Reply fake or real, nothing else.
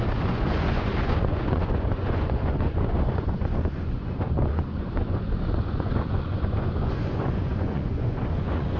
fake